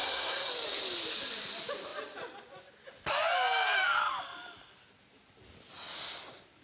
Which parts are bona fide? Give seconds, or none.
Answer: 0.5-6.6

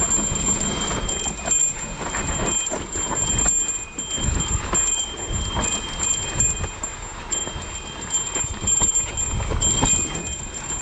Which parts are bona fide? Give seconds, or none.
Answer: 0.0-10.8

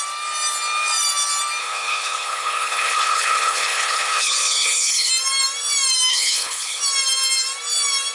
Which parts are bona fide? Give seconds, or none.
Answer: 0.0-1.6; 5.1-6.1; 6.8-8.1

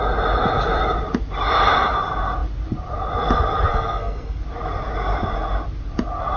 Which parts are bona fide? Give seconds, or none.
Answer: 0.0-3.7; 4.4-6.4

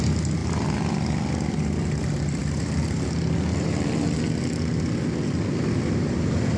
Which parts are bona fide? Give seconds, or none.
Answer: 0.0-6.6

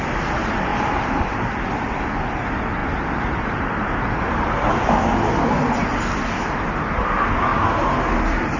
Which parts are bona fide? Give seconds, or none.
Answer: 0.0-0.7; 1.2-2.8; 4.7-7.5; 8.0-8.6

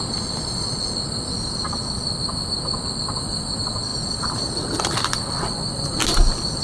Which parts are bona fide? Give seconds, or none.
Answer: 0.0-6.6